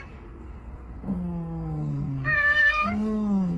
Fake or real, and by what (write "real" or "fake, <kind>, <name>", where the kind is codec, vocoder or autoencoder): fake, codec, SNAC